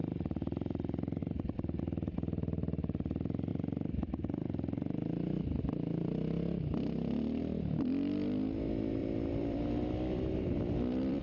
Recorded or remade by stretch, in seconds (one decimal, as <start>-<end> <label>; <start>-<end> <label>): 0.0-1.2 recorded; 1.2-1.8 remade; 1.8-9.0 recorded; 9.0-11.2 remade